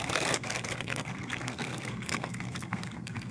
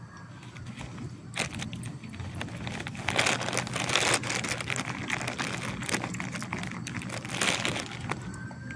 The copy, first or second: first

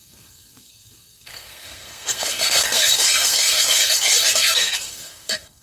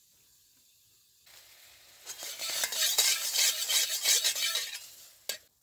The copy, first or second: first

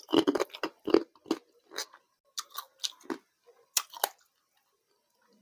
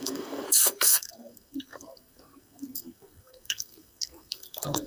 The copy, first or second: second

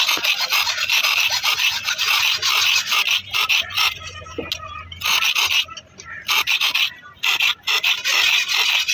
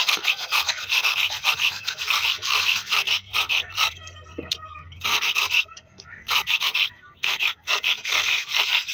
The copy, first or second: second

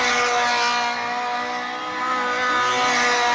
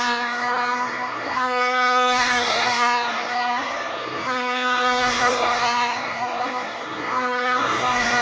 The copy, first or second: second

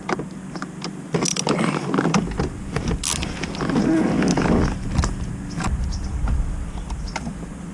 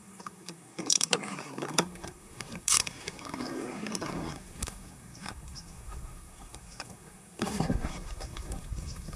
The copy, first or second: second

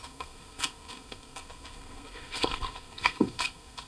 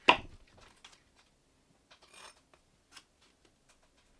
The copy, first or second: first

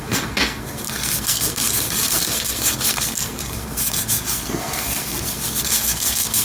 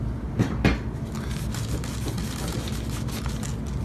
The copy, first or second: first